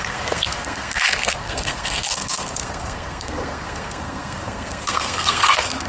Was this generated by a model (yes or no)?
yes